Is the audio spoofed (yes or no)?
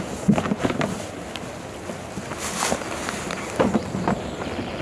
no